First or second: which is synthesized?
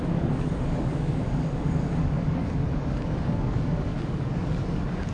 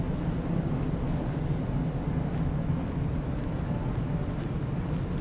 first